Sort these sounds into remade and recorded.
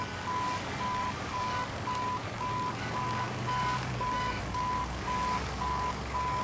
remade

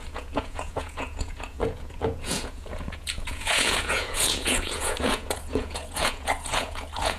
remade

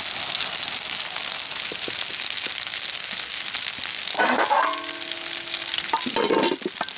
recorded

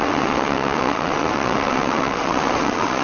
remade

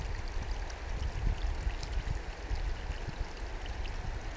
recorded